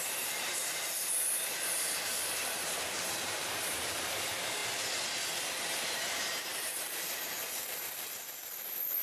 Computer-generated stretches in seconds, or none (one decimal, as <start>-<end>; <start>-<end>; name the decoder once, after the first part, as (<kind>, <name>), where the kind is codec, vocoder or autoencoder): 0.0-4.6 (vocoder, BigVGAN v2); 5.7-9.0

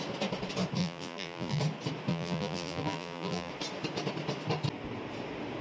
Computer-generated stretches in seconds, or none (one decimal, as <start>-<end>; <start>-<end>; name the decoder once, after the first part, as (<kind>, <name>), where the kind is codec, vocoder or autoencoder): 0.8-1.6 (vocoder, BigVGAN v2); 2.1-3.5

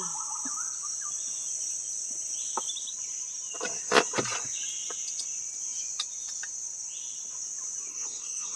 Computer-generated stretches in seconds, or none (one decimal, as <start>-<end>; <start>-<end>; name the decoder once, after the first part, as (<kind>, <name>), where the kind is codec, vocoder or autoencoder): 7.9-8.6 (codec, SNAC)